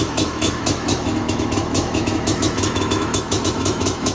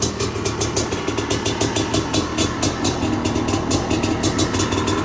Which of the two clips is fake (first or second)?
first